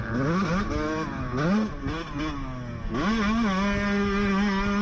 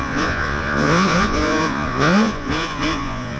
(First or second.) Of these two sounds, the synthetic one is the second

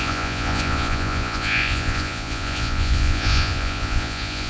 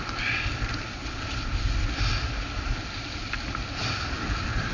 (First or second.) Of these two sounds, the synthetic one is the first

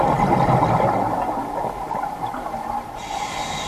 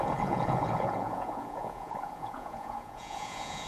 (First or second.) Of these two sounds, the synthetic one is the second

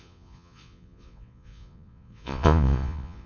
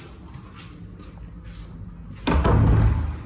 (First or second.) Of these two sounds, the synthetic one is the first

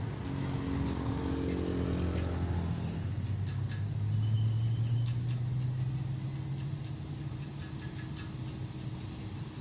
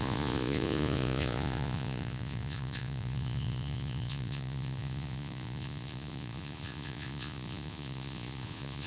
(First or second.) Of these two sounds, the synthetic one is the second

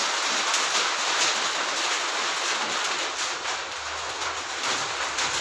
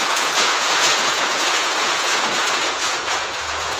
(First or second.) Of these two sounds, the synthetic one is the second